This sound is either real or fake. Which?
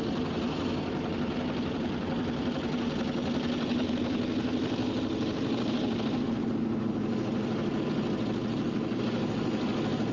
real